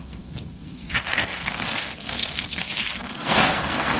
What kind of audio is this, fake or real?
fake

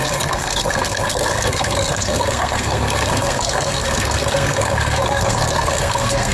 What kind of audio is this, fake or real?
fake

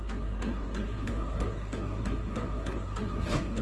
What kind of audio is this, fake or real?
fake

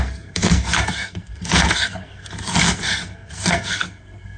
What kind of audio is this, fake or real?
fake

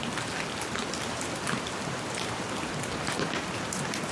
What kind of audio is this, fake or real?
real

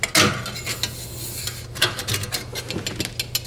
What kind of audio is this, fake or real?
real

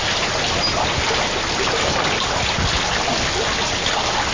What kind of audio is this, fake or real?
real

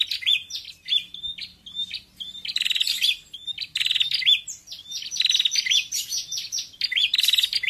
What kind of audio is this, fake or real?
real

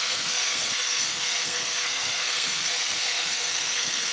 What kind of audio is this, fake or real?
fake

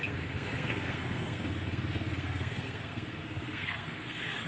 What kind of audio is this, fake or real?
fake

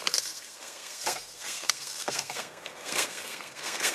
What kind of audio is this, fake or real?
fake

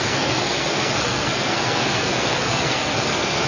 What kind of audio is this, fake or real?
fake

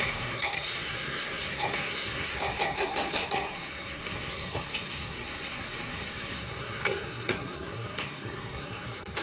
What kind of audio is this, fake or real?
fake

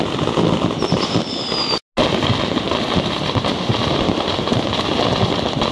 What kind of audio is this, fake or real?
real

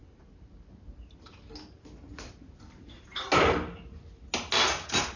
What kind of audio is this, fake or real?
real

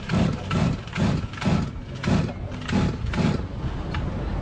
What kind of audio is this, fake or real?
real